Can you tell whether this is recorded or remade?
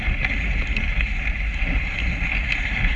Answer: recorded